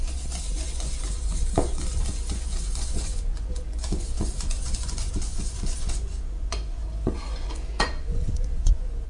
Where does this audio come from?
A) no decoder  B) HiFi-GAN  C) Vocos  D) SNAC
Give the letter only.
C